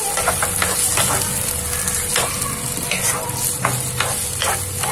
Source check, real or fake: real